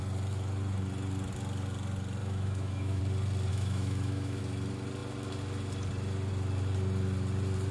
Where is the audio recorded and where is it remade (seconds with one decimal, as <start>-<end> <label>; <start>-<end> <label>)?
0.0-2.2 recorded; 2.2-3.0 remade; 3.0-3.5 recorded; 3.5-4.4 remade; 4.4-7.7 recorded